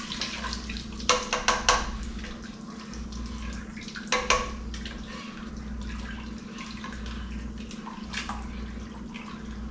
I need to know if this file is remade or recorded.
recorded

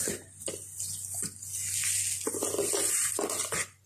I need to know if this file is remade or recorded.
recorded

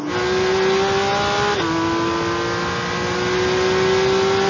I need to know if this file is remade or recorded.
recorded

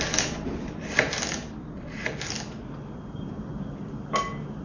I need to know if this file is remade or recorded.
recorded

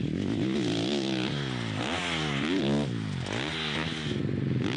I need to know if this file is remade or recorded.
recorded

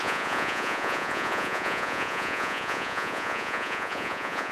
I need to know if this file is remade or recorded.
remade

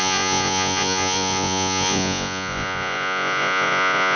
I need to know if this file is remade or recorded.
remade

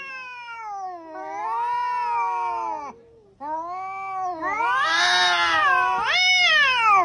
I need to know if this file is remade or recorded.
recorded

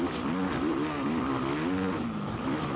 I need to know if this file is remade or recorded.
recorded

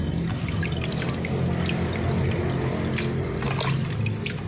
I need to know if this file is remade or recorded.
recorded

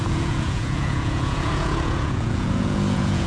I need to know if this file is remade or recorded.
remade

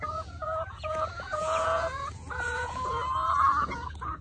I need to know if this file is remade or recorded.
remade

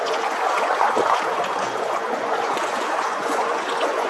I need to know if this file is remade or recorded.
remade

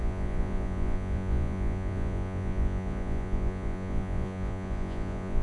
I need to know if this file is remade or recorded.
remade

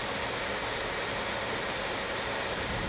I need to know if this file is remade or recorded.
recorded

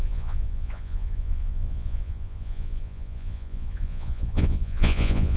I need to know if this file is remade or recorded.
remade